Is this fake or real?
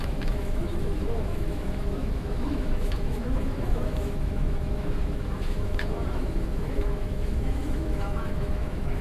fake